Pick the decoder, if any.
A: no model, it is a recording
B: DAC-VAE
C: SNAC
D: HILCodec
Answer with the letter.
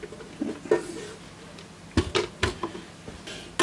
A